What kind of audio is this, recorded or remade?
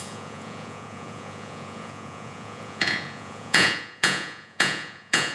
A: remade